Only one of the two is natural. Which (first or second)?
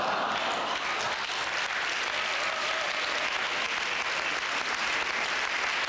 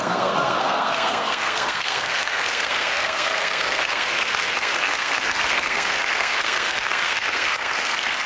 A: first